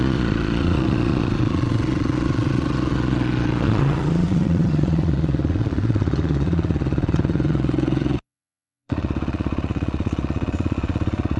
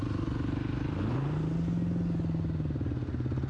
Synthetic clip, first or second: first